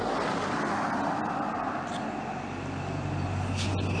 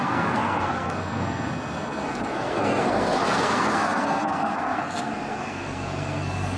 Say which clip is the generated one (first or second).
second